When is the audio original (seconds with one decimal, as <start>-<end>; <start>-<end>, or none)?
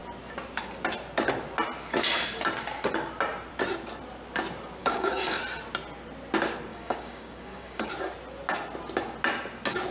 0.0-4.8; 5.4-6.7; 7.9-9.9